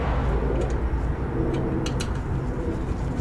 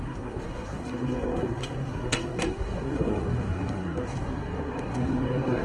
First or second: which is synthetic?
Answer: second